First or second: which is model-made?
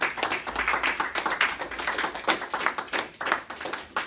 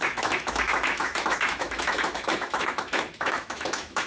second